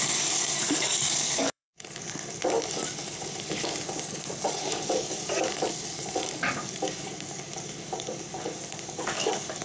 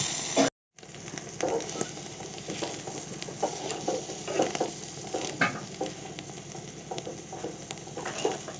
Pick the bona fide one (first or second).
second